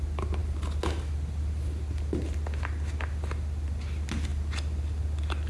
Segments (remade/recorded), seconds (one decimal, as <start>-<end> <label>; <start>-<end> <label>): 0.0-5.5 recorded